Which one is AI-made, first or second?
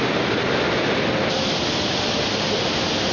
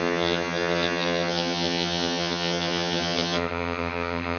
second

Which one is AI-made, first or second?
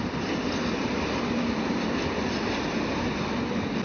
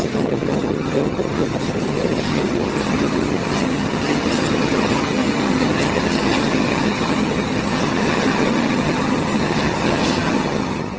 second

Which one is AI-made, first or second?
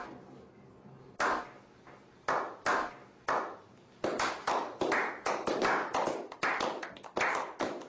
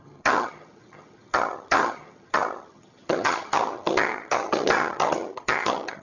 second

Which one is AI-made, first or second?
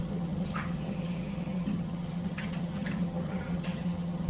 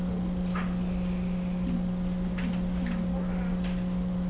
first